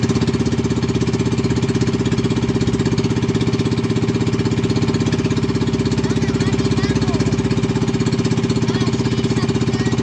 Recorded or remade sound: recorded